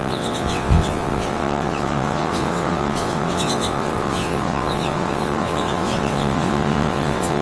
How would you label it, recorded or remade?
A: remade